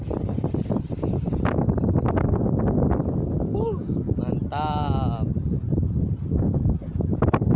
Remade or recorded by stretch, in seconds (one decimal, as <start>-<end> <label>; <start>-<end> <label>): 0.0-3.5 recorded; 3.5-4.2 remade; 4.2-7.6 recorded